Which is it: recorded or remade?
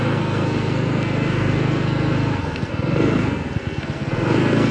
remade